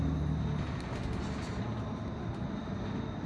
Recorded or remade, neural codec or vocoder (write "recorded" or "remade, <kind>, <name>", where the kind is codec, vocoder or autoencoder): recorded